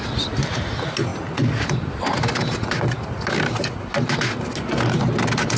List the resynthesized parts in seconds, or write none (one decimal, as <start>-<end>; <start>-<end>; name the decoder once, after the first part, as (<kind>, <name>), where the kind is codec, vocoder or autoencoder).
none

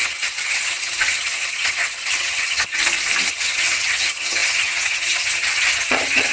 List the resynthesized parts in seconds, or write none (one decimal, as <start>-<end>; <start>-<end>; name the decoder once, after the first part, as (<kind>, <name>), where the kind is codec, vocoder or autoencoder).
0.0-2.8 (vocoder, HiFi-GAN); 3.3-6.3

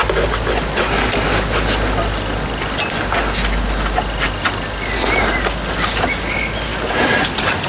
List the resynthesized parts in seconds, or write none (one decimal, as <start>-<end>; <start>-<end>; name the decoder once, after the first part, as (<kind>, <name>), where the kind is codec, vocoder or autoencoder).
none

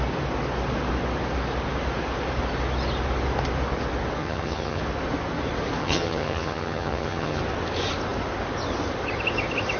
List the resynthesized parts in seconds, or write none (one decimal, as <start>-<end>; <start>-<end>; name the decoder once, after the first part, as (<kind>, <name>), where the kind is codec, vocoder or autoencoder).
4.2-4.8 (vocoder, HiFi-GAN); 5.8-7.4